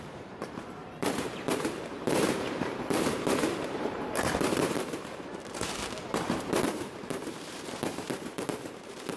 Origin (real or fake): fake